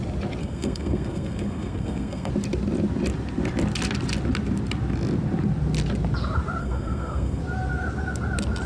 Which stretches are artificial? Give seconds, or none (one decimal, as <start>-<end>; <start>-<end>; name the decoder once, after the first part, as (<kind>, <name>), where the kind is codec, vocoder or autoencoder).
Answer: 0.4-2.3 (codec, SNAC); 6.6-7.4